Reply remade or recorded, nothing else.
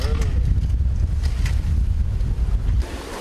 recorded